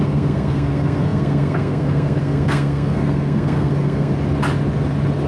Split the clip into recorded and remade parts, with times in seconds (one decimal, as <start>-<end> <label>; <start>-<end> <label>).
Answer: 0.0-4.1 remade; 4.1-5.3 recorded